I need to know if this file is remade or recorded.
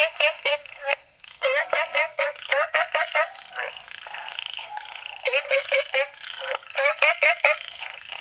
remade